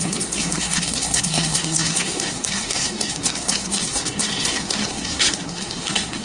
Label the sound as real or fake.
fake